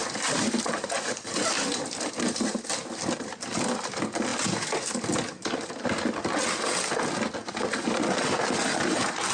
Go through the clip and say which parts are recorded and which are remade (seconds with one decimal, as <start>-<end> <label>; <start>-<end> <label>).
0.0-2.5 remade; 2.5-9.3 recorded